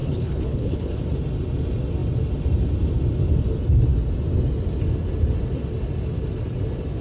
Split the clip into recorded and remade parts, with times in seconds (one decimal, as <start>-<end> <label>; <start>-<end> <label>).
0.0-1.0 remade; 1.0-7.0 recorded

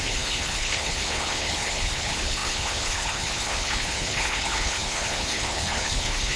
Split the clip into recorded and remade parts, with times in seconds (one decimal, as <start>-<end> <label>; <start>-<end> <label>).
0.0-6.4 remade

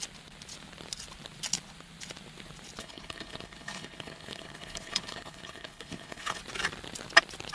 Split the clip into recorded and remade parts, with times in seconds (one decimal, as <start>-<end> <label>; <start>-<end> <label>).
0.0-2.8 recorded; 2.8-6.4 remade; 6.4-7.5 recorded

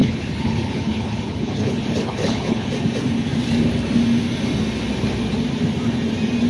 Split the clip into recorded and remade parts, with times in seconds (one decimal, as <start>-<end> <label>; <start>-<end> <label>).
0.0-2.7 remade; 2.7-6.5 recorded

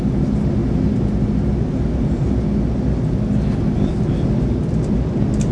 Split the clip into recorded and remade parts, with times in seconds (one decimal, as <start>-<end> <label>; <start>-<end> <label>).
0.0-5.5 recorded

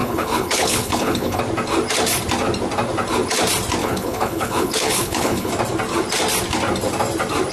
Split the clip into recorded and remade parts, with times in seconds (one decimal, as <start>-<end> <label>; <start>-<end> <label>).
0.0-1.4 remade; 1.4-3.8 recorded; 3.8-5.5 remade; 5.5-7.5 recorded

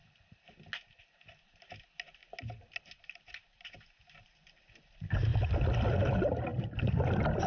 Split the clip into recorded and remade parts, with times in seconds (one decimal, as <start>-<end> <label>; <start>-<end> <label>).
0.0-7.5 recorded